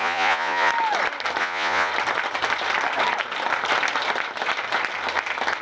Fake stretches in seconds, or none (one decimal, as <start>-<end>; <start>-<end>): 0.0-0.7; 1.4-1.9